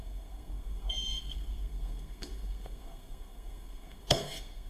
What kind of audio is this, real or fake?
fake